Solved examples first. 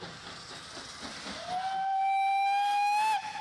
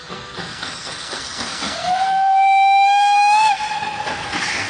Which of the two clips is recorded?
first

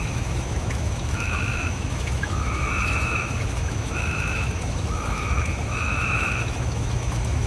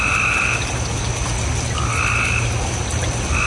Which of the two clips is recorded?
second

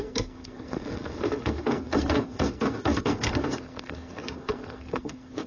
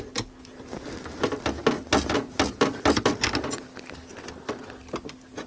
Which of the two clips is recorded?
second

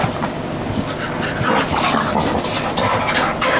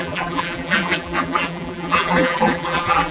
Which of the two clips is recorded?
first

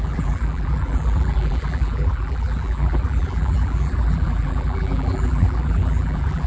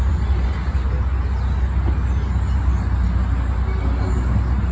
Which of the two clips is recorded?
second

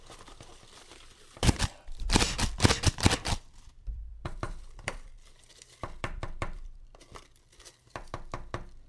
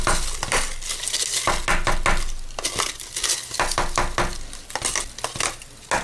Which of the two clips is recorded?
second